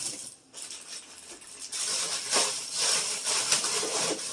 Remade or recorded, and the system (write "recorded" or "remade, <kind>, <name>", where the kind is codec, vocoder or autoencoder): remade, vocoder, BigVGAN v2